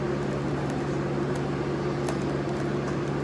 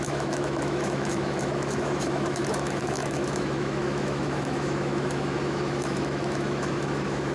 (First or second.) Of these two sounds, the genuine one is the first